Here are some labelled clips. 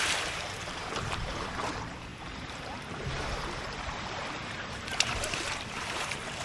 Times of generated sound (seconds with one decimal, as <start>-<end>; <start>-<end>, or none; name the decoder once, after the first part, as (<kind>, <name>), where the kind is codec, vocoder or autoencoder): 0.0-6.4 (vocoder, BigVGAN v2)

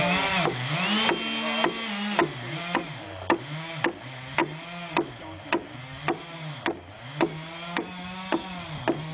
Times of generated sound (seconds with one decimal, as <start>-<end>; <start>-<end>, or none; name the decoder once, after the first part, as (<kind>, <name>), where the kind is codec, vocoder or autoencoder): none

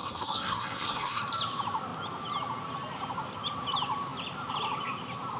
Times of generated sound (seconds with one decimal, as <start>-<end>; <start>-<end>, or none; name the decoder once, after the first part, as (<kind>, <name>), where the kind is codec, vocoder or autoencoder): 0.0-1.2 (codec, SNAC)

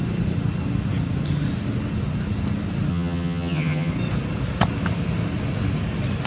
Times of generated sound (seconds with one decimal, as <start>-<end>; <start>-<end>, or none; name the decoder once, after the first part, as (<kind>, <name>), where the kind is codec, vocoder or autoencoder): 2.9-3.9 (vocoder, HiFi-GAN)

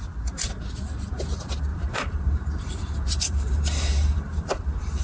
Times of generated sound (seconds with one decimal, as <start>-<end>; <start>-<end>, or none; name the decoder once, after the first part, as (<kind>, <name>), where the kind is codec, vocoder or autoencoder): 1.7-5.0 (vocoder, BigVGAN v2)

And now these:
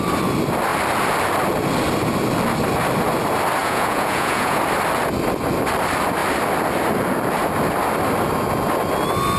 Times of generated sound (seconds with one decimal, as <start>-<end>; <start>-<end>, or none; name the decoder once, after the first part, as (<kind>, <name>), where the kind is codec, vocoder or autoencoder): 3.6-4.6 (vocoder, Vocos)

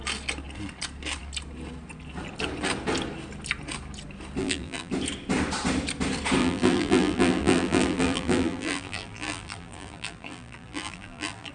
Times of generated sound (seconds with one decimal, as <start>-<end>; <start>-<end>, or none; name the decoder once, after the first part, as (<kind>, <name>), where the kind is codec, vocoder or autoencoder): 4.4-4.9 (vocoder, BigVGAN v2); 6.4-11.5

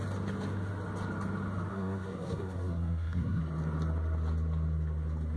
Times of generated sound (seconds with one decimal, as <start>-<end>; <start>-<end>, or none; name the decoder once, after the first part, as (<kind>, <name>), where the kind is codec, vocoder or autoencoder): 1.7-3.4 (codec, SNAC)